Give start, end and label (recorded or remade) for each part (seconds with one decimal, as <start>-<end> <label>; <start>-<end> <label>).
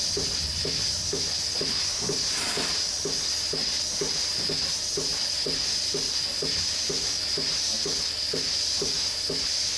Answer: 0.0-5.1 recorded; 5.1-6.9 remade; 6.9-9.8 recorded